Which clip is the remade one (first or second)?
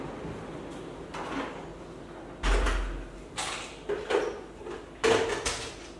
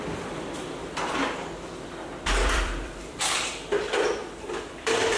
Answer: second